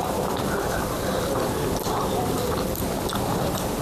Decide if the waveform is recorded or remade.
recorded